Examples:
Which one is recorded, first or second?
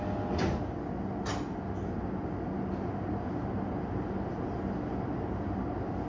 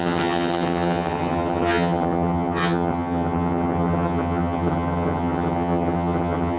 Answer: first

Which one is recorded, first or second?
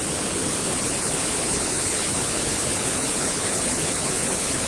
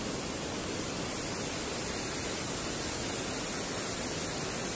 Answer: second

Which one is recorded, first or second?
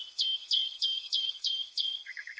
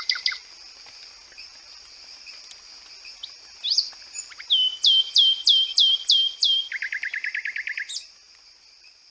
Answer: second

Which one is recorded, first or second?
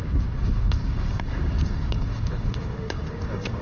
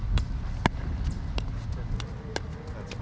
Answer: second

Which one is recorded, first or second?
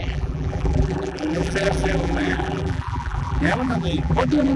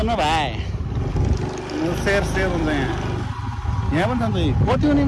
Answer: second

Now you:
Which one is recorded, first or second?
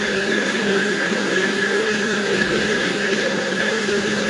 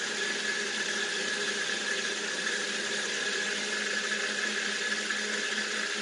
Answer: second